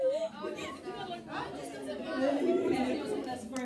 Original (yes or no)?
yes